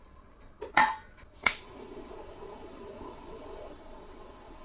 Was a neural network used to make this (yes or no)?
yes